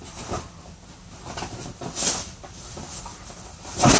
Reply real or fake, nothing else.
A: real